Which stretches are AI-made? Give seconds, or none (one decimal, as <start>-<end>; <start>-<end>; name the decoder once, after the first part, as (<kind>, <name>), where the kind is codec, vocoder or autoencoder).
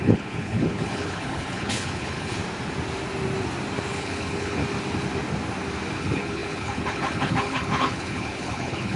0.0-2.4 (codec, HILCodec); 3.9-4.6; 6.0-9.0